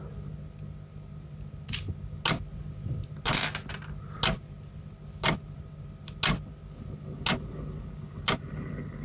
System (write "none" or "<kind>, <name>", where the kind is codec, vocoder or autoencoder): none